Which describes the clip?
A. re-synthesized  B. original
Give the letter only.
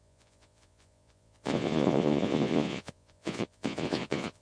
A